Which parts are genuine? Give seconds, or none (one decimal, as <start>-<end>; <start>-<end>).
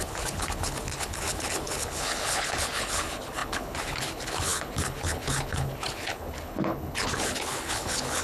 none